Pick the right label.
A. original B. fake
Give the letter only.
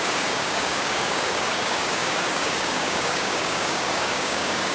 B